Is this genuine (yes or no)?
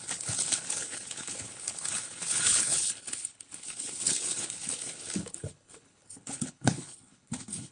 no